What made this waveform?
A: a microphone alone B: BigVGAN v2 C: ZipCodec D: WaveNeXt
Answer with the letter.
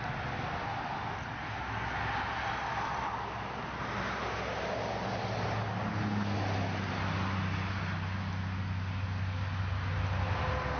A